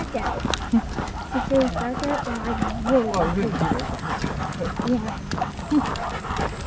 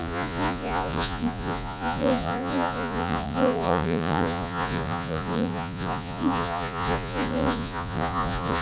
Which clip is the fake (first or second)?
second